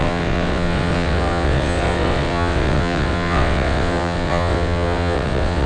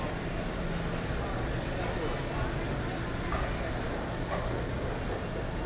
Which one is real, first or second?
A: second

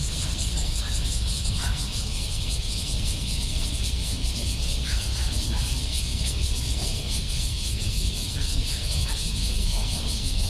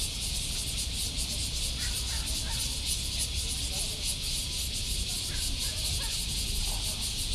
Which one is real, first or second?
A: second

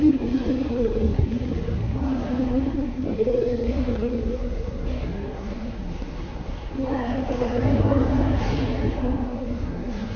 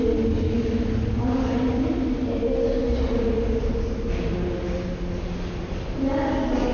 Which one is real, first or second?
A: second